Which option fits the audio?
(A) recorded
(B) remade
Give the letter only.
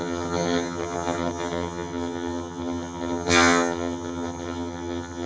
B